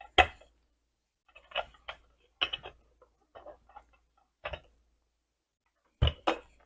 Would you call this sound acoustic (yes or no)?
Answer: yes